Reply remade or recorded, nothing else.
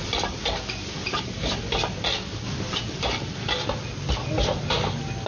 recorded